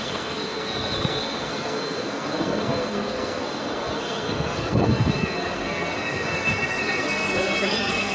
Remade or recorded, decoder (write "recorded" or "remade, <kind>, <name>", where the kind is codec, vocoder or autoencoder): remade, codec, SNAC